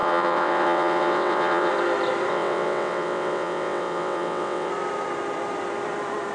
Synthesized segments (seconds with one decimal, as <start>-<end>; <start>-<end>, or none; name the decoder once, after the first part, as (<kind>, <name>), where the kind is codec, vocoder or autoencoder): 0.0-1.7 (vocoder, WaveNeXt); 2.3-4.7